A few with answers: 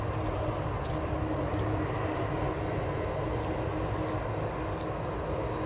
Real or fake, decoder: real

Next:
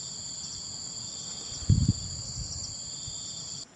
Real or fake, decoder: real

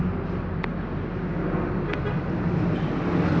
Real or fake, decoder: real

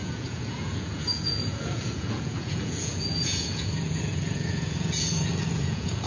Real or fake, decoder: fake, vocoder, Vocos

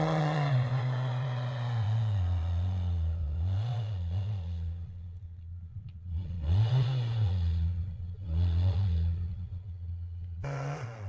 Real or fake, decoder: fake, vocoder, Vocos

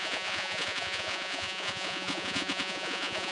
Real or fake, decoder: fake, vocoder, Vocos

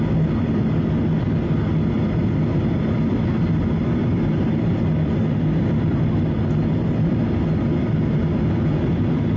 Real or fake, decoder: real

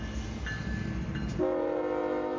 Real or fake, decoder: real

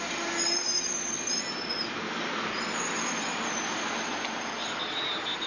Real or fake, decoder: real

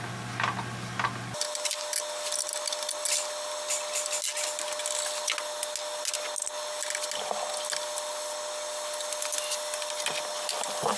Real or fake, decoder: real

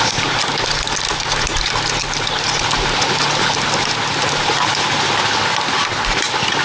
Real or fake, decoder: real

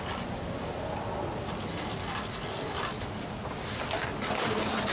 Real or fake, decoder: real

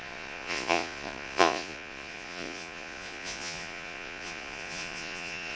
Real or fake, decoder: fake, vocoder, Vocos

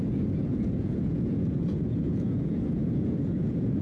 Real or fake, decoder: fake, vocoder, Vocos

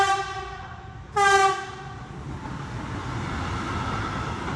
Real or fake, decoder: real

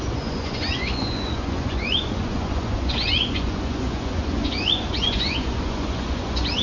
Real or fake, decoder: fake, vocoder, Vocos